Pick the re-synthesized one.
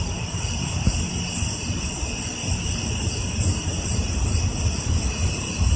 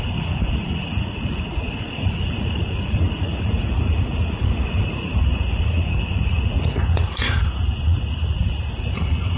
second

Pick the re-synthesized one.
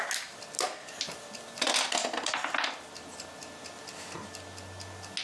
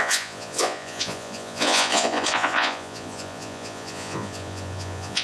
second